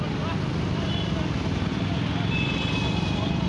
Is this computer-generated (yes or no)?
no